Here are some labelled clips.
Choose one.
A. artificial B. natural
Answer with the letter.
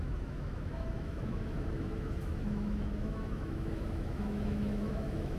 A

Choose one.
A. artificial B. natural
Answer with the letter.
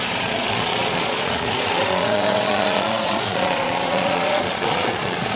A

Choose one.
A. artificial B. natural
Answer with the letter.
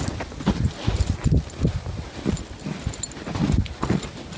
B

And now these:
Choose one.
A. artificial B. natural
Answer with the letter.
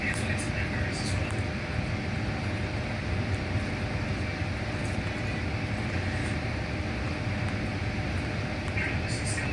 B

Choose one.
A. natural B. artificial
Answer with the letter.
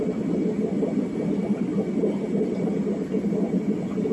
A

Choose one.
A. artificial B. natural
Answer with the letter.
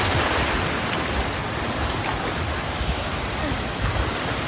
B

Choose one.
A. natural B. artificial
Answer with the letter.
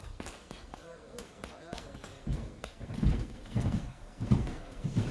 B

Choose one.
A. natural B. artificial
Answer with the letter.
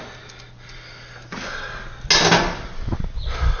A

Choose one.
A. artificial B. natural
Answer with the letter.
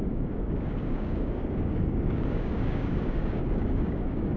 A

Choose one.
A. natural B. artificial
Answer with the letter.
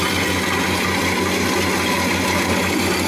A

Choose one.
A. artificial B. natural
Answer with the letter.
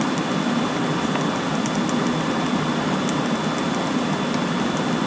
B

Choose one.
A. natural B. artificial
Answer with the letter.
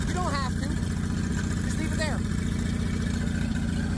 A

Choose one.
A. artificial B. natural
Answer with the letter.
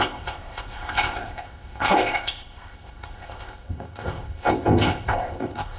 A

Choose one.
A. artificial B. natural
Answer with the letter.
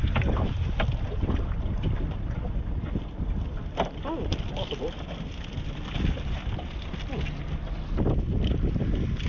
B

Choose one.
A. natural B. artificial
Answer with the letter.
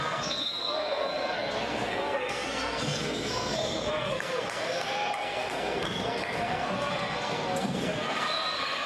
B